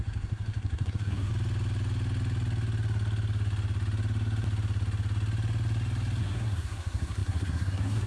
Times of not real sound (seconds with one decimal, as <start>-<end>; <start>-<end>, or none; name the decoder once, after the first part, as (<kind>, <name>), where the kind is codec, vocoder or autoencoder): 0.0-1.3 (codec, SNAC); 6.2-8.1